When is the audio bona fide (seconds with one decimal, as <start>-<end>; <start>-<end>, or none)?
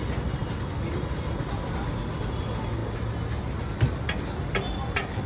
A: 0.0-5.3